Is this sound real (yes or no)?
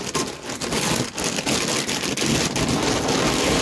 yes